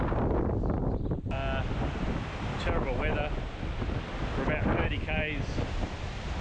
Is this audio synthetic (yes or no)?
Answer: no